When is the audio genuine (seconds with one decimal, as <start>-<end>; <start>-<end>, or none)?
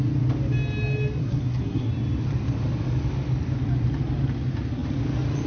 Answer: 0.0-1.2; 1.9-5.5